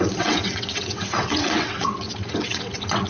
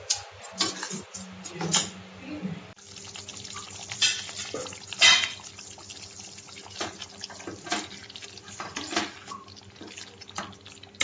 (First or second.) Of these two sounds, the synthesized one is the first